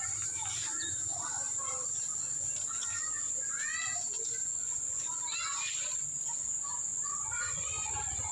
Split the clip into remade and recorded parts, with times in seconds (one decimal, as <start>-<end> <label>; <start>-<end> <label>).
0.0-4.5 recorded; 4.5-5.2 remade; 5.2-6.9 recorded; 6.9-7.9 remade; 7.9-8.3 recorded

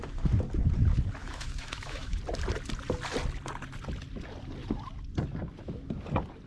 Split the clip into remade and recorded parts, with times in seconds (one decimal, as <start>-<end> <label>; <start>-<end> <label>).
0.0-1.2 recorded; 1.2-2.2 remade; 2.2-6.5 recorded

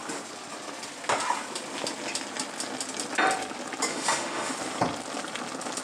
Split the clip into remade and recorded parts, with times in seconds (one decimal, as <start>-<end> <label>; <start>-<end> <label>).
0.0-3.9 recorded; 3.9-4.5 remade; 4.5-5.8 recorded

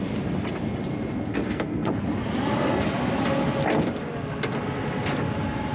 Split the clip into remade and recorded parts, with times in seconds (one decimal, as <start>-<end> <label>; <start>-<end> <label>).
0.0-1.3 recorded; 1.3-1.9 remade; 1.9-5.7 recorded

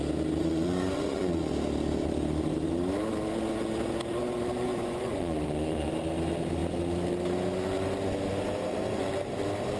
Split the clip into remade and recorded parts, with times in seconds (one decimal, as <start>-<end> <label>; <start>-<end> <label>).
0.0-0.4 recorded; 0.4-1.5 remade; 1.5-4.7 recorded; 4.7-5.9 remade; 5.9-9.8 recorded

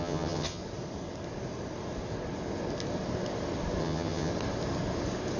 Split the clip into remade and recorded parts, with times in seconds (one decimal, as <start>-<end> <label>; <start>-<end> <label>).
0.0-0.6 remade; 0.6-3.8 recorded; 3.8-4.3 remade; 4.3-5.4 recorded

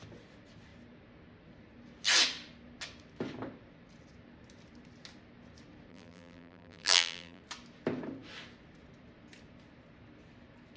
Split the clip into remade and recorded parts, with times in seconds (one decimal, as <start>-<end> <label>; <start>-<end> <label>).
0.0-5.9 recorded; 5.9-7.4 remade; 7.4-10.8 recorded